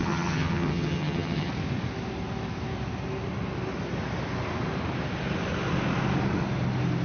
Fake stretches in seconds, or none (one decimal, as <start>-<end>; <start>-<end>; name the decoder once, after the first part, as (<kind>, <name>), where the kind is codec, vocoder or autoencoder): 0.0-1.5 (vocoder, HiFi-GAN)